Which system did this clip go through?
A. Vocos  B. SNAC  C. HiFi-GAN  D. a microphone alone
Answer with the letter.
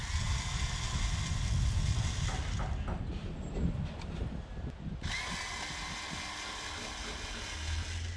D